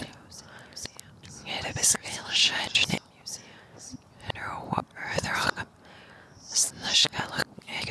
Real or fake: real